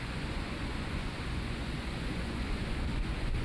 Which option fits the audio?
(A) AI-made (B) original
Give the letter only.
A